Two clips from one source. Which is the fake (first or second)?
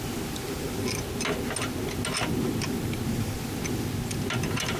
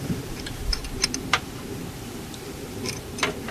second